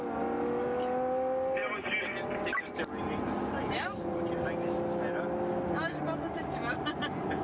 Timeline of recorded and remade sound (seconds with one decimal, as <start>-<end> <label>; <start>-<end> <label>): 0.0-7.4 recorded